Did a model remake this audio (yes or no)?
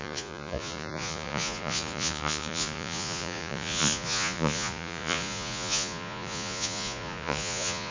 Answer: yes